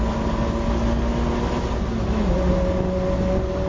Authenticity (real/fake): real